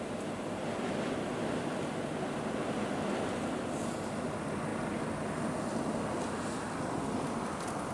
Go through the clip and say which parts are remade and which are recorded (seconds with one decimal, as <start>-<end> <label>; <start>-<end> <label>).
0.0-7.9 recorded